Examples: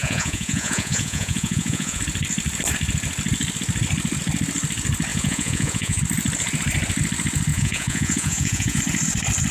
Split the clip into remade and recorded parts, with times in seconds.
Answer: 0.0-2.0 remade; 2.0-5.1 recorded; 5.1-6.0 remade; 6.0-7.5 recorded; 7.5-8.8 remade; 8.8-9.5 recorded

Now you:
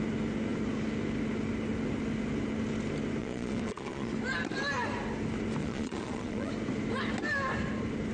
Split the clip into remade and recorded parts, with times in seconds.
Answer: 0.0-3.2 recorded; 3.2-4.1 remade; 4.1-5.6 recorded; 5.6-6.5 remade; 6.5-8.1 recorded